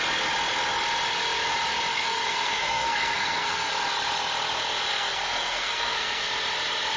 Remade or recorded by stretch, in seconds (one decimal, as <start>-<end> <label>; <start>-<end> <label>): 0.0-1.9 recorded; 1.9-3.7 remade; 3.7-4.9 recorded; 4.9-6.3 remade; 6.3-7.0 recorded